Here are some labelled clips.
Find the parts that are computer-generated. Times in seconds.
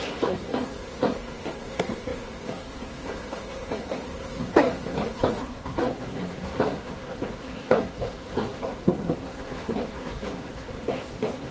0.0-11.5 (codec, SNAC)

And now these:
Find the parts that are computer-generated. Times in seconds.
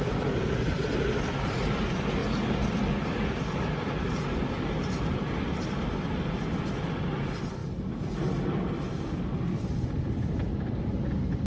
none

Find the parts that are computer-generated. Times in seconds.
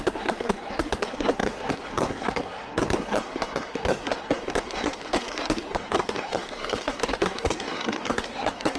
0.0-8.8 (codec, SNAC)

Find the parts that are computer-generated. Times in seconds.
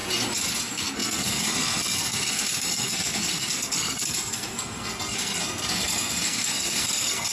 0.6-7.3 (codec, SNAC)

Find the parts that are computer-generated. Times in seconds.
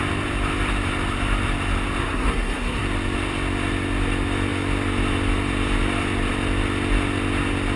2.0-2.8 (codec, SNAC)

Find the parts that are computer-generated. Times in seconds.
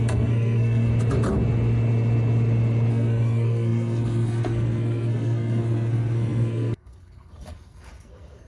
0.0-0.9 (codec, SNAC); 2.9-8.5